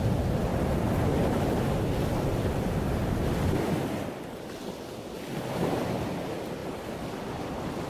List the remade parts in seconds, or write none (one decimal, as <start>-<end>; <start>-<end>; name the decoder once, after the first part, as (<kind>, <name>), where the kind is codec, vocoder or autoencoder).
none